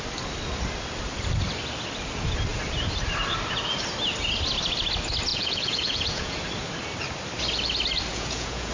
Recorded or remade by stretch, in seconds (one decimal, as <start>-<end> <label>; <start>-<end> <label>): 0.0-5.3 recorded; 5.3-6.4 remade; 6.4-8.1 recorded; 8.1-8.7 remade